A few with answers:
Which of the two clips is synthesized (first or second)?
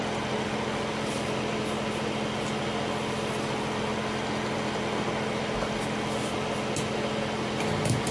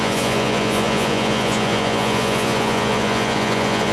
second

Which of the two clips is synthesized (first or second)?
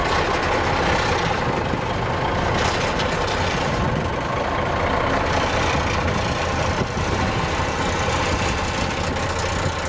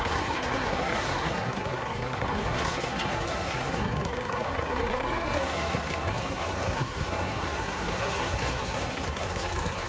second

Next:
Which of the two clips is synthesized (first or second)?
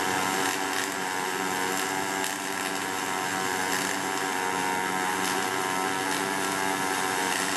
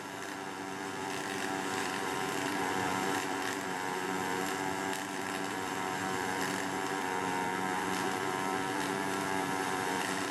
second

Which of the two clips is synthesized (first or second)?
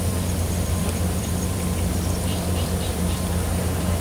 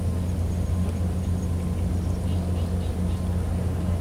first